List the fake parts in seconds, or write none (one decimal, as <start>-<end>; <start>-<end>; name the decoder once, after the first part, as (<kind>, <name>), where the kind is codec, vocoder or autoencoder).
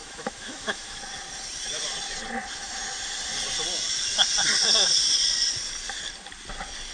0.0-1.0 (autoencoder, DAC-VAE)